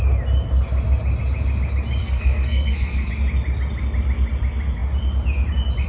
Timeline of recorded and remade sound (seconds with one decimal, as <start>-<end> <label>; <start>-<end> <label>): 0.0-2.0 recorded; 2.0-3.1 remade; 3.1-5.9 recorded